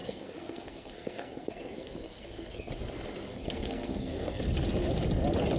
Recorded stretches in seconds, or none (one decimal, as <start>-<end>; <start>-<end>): 2.7-3.3; 4.4-5.6